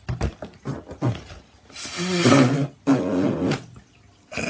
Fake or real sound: real